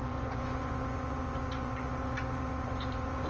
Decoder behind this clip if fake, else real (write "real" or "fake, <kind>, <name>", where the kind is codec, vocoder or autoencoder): fake, vocoder, Vocos